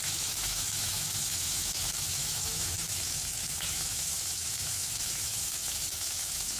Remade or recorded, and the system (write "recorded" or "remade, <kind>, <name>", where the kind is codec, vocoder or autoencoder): remade, autoencoder, DAC-VAE